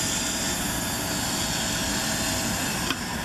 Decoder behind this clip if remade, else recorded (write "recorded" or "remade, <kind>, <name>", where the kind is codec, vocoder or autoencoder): recorded